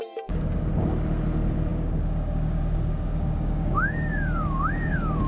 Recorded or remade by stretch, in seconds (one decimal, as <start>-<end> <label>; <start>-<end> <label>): 0.0-0.6 remade; 0.6-1.7 recorded; 1.7-5.3 remade